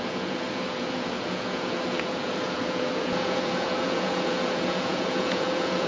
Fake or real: fake